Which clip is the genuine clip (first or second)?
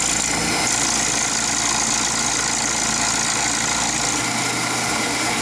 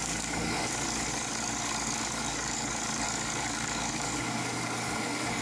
first